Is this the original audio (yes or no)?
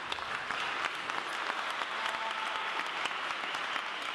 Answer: yes